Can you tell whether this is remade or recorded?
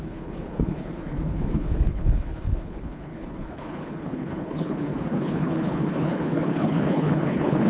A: remade